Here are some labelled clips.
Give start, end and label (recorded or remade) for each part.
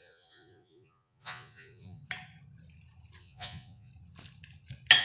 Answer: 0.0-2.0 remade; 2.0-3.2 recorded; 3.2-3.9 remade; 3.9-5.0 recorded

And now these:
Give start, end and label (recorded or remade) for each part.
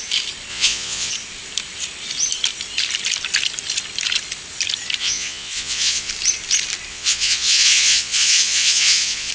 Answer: 0.0-0.5 recorded; 0.5-1.1 remade; 1.1-5.0 recorded; 5.0-6.1 remade; 6.1-6.9 recorded; 6.9-9.3 remade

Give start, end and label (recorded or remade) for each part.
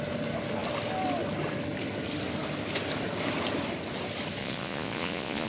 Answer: 0.0-4.4 recorded; 4.4-5.5 remade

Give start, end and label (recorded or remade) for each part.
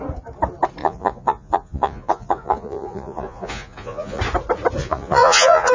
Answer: 0.0-0.8 recorded; 0.8-4.2 remade; 4.2-4.8 recorded; 4.8-5.7 remade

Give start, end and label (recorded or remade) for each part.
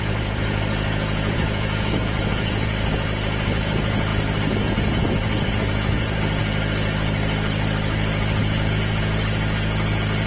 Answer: 0.0-4.1 remade; 4.1-4.6 recorded; 4.6-6.4 remade; 6.4-8.4 recorded; 8.4-10.3 remade